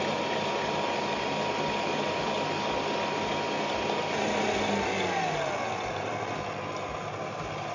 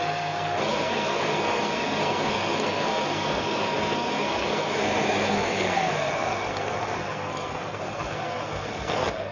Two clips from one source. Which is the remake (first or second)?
second